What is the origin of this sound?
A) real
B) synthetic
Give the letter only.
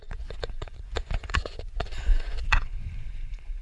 B